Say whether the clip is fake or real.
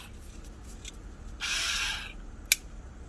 real